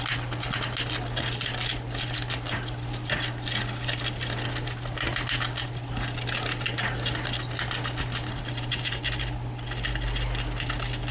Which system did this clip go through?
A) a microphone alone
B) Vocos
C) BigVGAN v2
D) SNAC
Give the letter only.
A